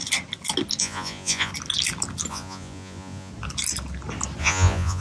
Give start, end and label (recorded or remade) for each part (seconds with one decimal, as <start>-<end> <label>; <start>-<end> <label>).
0.0-0.8 recorded; 0.8-1.5 remade; 1.5-2.3 recorded; 2.3-3.3 remade; 3.3-4.4 recorded; 4.4-5.0 remade